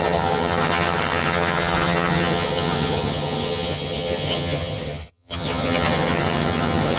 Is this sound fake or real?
fake